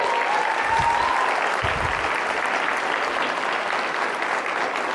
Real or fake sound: real